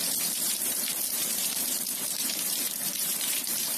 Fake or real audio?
fake